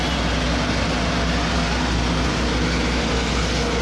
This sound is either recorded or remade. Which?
recorded